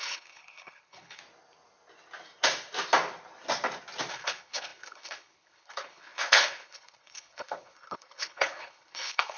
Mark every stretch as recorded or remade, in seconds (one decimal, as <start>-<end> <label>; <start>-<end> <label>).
0.0-1.2 remade; 1.2-4.1 recorded; 4.1-9.4 remade